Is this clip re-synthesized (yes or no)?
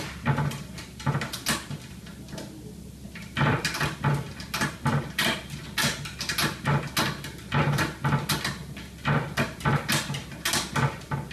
no